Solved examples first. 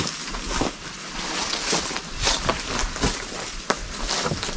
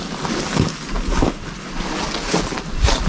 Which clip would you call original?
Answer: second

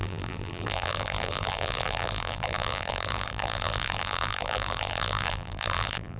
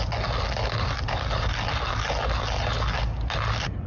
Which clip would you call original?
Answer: second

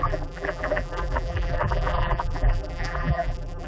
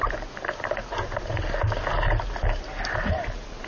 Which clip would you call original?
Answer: second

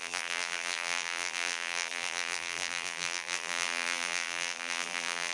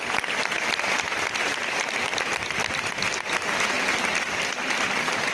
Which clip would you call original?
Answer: second